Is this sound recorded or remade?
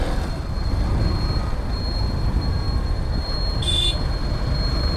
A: recorded